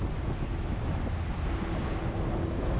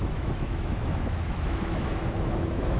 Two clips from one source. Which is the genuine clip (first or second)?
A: first